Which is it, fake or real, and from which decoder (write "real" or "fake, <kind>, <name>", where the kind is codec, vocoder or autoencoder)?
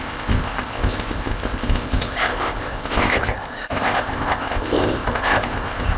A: fake, codec, ZipCodec